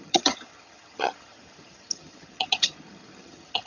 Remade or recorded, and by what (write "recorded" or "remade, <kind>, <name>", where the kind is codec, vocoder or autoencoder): remade, vocoder, HiFi-GAN